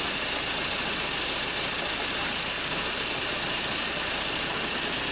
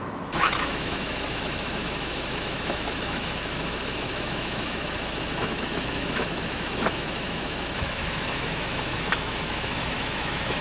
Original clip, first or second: first